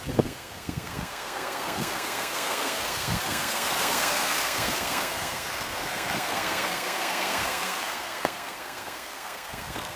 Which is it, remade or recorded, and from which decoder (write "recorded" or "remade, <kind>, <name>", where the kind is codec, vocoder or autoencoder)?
remade, codec, SNAC